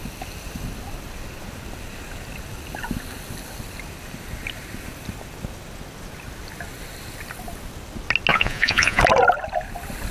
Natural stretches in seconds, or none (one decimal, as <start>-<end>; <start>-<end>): 0.0-8.3; 9.0-10.1